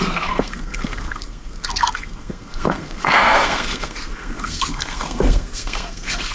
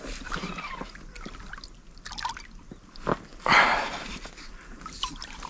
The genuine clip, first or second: second